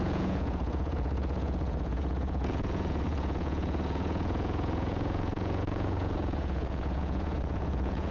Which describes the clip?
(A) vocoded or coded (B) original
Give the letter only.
A